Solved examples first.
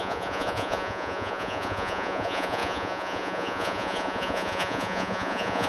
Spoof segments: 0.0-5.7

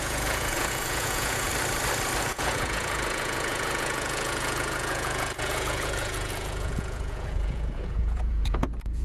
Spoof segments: 0.0-1.5; 2.2-9.0

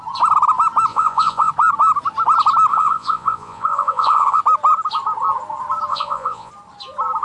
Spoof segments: 0.9-1.5; 2.7-4.4; 5.9-6.5

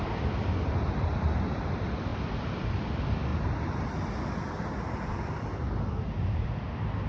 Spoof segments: none

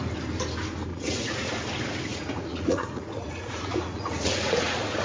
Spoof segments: 0.9-1.5; 2.1-5.0

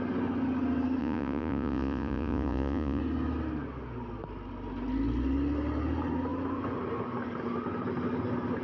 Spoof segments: 1.0-3.0

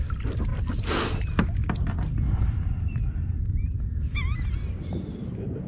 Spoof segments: none